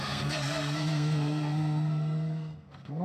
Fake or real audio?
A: fake